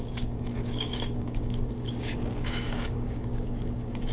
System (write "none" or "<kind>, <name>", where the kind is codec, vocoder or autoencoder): codec, DAC